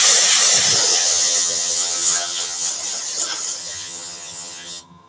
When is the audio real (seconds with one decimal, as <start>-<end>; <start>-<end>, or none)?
0.0-0.9; 2.7-3.6